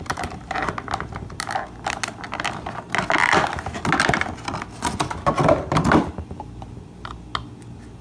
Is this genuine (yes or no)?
yes